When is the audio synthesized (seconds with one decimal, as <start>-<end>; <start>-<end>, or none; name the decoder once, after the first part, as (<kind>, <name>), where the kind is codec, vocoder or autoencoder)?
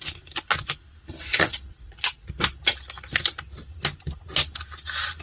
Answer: 1.3-2.3 (vocoder, Vocos)